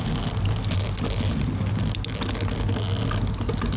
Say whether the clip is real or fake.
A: real